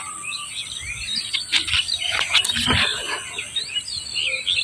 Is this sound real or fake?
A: real